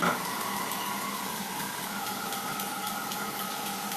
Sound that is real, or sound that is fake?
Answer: fake